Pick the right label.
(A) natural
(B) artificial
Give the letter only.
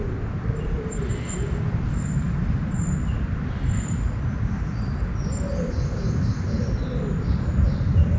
A